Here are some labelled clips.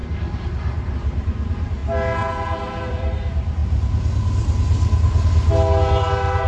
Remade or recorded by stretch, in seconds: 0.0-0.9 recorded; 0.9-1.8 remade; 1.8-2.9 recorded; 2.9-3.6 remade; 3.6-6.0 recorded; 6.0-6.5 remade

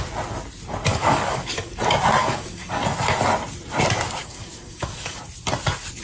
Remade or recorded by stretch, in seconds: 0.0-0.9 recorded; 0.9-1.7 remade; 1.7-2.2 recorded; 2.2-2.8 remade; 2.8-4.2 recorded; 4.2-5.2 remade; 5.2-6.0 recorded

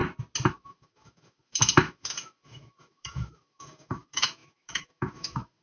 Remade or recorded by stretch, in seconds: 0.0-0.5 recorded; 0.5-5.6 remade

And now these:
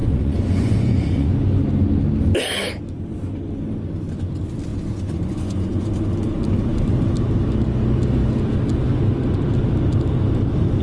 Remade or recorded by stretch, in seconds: 0.0-1.3 remade; 1.3-4.7 recorded; 4.7-5.9 remade; 5.9-10.8 recorded